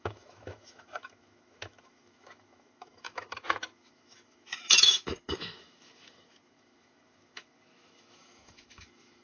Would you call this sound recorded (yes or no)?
no